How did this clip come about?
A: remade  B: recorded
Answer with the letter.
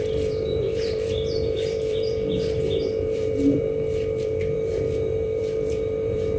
A